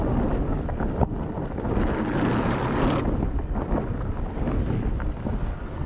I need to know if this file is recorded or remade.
recorded